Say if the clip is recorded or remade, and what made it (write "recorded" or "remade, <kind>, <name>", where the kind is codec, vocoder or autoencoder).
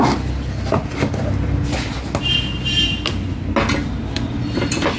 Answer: recorded